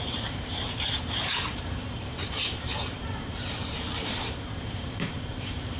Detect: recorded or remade remade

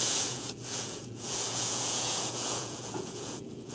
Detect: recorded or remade remade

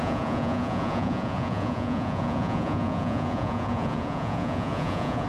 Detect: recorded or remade remade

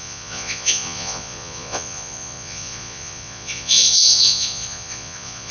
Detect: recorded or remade remade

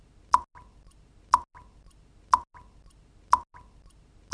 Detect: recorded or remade recorded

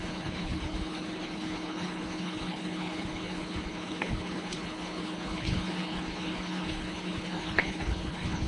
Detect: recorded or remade remade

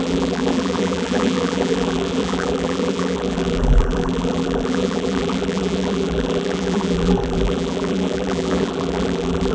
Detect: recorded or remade remade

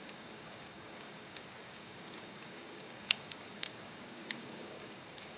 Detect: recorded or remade remade